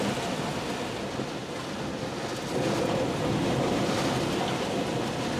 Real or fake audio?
real